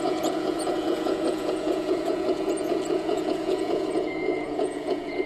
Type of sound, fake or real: fake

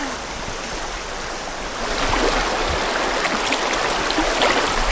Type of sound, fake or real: real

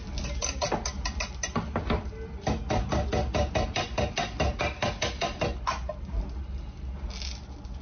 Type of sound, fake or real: real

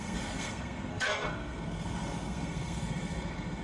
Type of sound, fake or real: fake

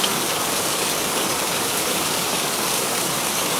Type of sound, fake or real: fake